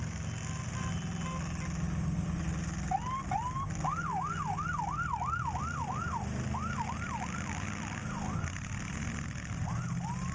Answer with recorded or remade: recorded